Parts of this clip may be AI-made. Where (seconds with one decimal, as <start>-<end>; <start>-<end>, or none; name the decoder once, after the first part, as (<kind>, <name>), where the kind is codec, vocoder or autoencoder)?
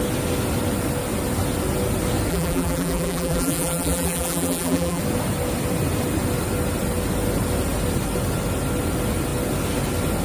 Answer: 2.3-5.0 (vocoder, BigVGAN v2)